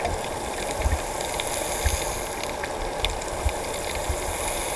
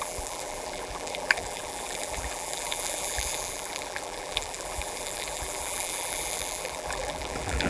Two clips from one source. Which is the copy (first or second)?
second